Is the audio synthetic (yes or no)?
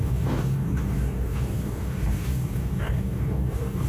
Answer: yes